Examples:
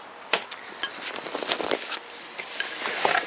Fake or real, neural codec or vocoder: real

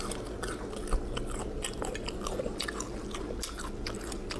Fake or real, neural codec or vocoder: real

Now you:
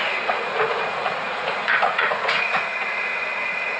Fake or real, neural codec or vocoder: fake, vocoder, Vocos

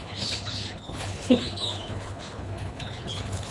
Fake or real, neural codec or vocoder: fake, codec, HILCodec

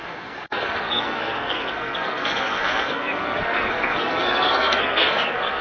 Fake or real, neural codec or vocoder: fake, codec, SNAC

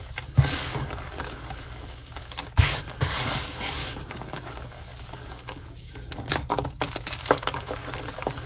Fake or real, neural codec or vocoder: fake, codec, DAC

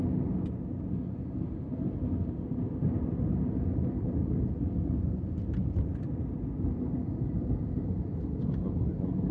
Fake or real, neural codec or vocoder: real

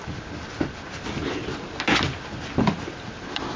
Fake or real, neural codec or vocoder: real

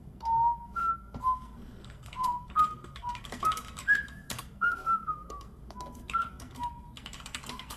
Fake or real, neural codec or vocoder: fake, codec, SNAC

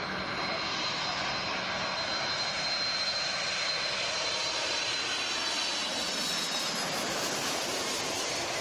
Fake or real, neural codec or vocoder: real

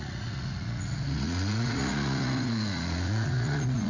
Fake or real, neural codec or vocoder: fake, vocoder, Vocos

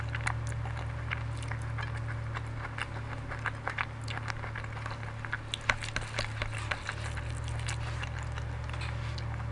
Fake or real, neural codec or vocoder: real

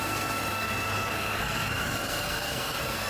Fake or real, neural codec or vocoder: fake, codec, SNAC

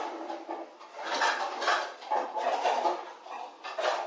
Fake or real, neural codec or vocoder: real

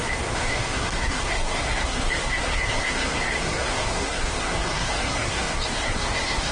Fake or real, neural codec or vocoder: fake, codec, SNAC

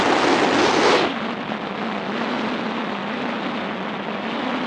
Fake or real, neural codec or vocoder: real